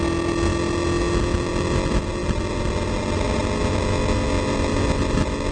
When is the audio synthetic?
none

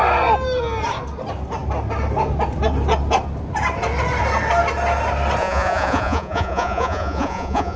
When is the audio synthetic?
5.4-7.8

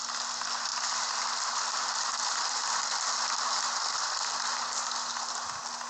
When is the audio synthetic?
none

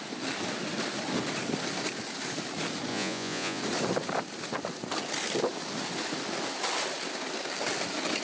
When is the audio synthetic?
2.9-3.6

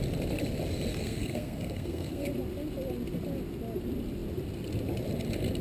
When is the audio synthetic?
0.9-2.3

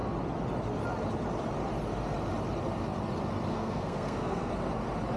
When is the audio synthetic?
3.5-4.5

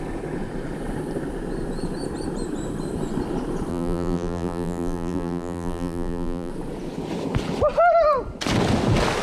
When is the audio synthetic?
3.7-6.5

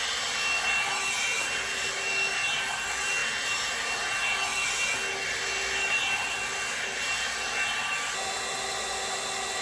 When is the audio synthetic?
none